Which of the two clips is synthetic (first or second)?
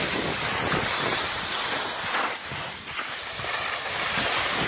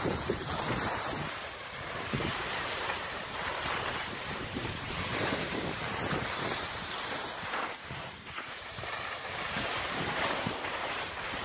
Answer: second